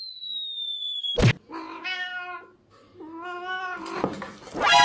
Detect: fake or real real